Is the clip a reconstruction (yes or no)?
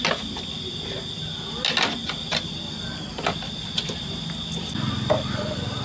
no